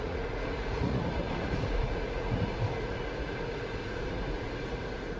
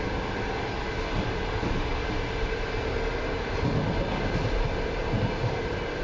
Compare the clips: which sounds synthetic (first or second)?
first